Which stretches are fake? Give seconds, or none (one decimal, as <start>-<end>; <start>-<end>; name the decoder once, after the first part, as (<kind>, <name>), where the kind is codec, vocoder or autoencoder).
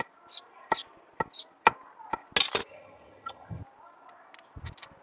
2.7-3.6 (vocoder, HiFi-GAN)